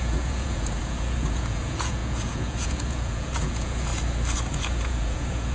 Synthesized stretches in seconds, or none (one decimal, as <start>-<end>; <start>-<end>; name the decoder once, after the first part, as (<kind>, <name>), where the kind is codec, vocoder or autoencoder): 0.0-3.9 (vocoder, Vocos); 4.5-5.5